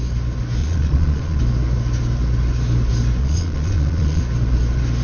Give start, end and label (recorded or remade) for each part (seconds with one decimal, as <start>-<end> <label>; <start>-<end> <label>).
0.0-0.6 recorded; 0.6-1.4 remade; 1.4-3.2 recorded; 3.2-4.2 remade; 4.2-5.0 recorded

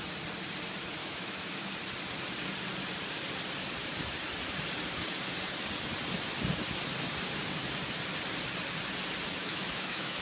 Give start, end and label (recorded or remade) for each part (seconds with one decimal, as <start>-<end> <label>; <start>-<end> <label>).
0.0-1.0 recorded; 1.0-1.7 remade; 1.7-9.4 recorded; 9.4-10.2 remade

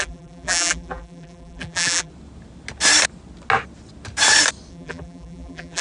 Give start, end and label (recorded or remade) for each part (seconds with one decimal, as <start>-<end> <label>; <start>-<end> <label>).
0.0-2.1 remade; 2.1-4.7 recorded; 4.7-5.8 remade